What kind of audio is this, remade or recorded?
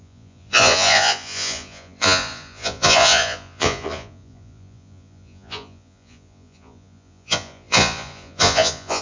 remade